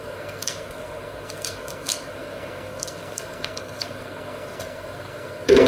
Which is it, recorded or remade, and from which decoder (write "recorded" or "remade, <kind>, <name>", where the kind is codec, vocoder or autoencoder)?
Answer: remade, codec, SNAC